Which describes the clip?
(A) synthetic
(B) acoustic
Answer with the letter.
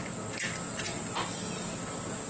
B